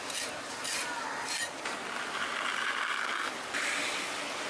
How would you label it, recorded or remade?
recorded